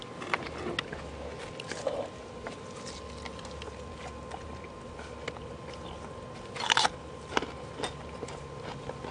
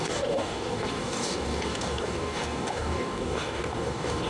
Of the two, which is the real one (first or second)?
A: first